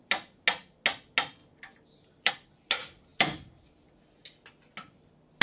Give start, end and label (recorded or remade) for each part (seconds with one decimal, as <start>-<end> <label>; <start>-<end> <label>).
0.0-1.4 recorded; 1.4-2.3 remade; 2.3-5.4 recorded